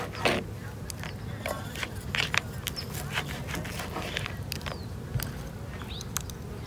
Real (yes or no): yes